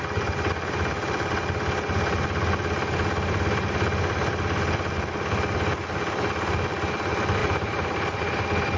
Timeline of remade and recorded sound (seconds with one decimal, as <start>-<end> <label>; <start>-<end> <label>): 0.0-7.4 recorded; 7.4-8.2 remade; 8.2-8.8 recorded